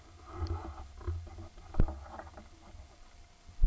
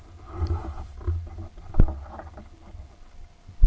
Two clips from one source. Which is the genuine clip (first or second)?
first